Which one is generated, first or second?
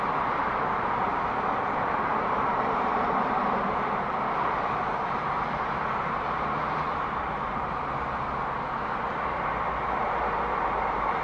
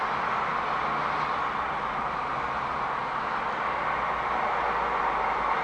first